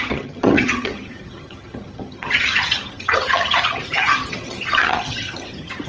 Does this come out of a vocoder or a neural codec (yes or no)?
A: yes